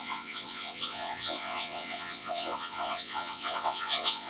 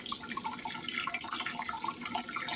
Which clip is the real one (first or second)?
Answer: second